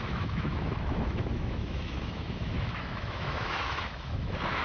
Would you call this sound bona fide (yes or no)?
no